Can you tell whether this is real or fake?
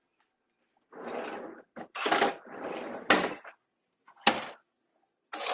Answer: real